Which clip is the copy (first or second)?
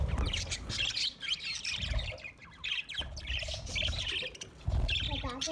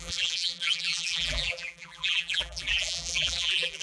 second